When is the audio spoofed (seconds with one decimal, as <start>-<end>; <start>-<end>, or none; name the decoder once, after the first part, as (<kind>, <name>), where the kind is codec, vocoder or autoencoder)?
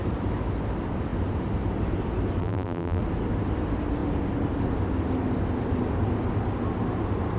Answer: 2.4-3.0 (vocoder, BigVGAN v2)